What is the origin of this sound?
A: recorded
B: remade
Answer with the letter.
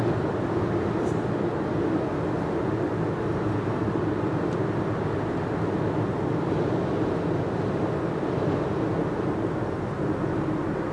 A